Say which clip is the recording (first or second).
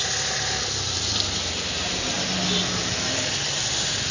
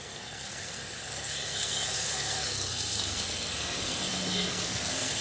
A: first